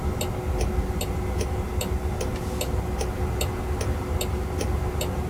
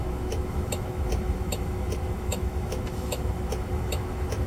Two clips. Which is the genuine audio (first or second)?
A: first